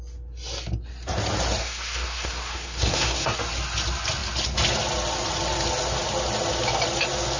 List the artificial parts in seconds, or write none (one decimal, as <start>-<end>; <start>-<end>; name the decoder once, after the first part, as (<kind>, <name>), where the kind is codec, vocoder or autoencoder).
1.6-3.4 (codec, SNAC)